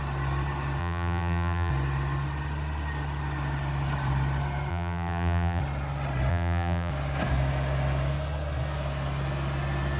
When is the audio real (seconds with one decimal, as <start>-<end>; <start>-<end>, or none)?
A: 0.0-0.8; 1.7-4.7; 5.6-6.3; 6.9-10.0